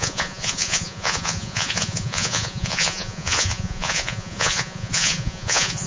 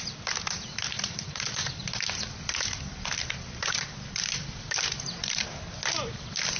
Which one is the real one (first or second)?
second